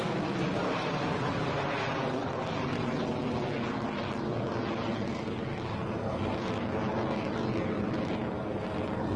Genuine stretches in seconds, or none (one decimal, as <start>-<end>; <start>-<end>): 0.0-9.2